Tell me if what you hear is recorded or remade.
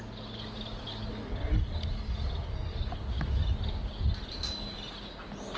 recorded